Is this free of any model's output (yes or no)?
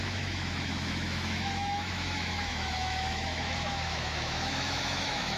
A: no